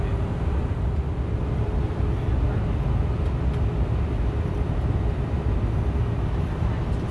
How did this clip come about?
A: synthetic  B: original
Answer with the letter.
B